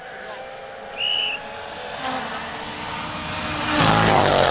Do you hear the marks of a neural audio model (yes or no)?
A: no